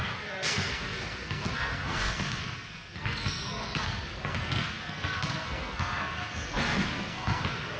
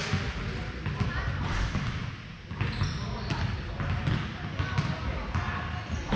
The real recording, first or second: second